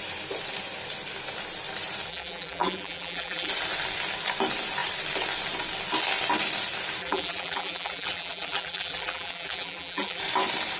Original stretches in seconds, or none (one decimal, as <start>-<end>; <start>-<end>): 0.0-2.1; 3.5-7.0; 10.2-10.8